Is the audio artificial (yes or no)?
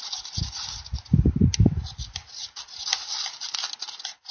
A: no